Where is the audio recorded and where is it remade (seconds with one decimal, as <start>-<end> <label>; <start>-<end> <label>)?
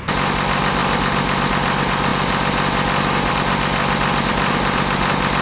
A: 0.0-5.4 recorded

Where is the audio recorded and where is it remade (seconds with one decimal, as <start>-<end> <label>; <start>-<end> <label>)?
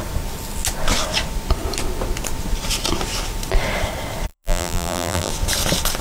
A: 0.0-4.3 recorded; 4.3-5.3 remade; 5.3-6.0 recorded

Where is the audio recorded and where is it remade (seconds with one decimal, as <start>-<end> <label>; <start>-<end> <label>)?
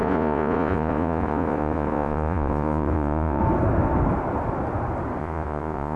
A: 0.0-3.4 remade; 3.4-5.2 recorded; 5.2-6.0 remade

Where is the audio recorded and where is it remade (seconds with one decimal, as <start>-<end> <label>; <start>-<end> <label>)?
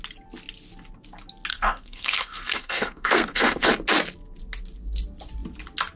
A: 0.0-1.5 recorded; 1.5-3.7 remade; 3.7-6.0 recorded